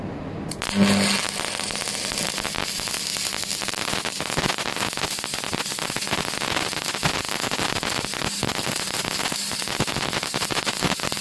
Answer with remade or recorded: recorded